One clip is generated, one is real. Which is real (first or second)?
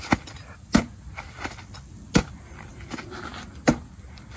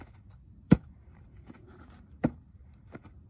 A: first